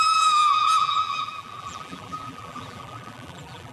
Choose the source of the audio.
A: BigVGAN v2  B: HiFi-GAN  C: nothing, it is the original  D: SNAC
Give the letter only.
A